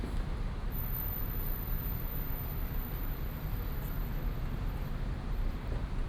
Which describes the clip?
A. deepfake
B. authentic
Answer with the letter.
A